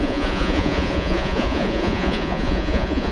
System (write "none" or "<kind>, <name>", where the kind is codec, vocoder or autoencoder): vocoder, Vocos